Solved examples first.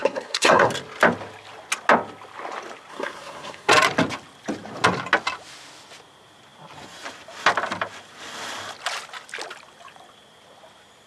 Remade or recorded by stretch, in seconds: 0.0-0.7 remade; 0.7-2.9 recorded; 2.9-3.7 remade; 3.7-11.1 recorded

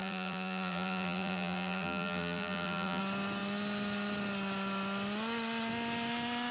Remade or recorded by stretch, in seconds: 0.0-3.0 remade; 3.0-6.5 recorded

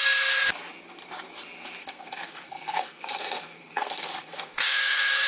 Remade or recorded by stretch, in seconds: 0.0-1.8 recorded; 1.8-5.3 remade

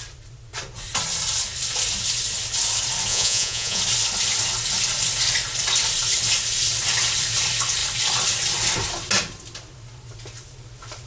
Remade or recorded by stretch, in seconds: 0.0-3.1 recorded; 3.1-3.8 remade; 3.8-11.1 recorded